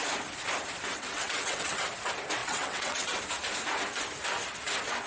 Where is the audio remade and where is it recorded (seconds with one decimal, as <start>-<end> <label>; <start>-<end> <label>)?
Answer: 0.0-0.9 recorded; 0.9-1.8 remade; 1.8-2.4 recorded; 2.4-3.2 remade; 3.2-5.1 recorded